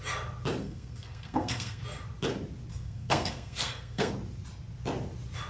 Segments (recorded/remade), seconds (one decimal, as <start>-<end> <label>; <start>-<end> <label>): 0.0-0.6 recorded; 0.6-1.8 remade; 1.8-2.7 recorded; 2.7-4.1 remade; 4.1-5.5 recorded